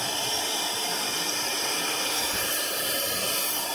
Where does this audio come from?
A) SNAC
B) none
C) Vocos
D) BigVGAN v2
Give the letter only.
B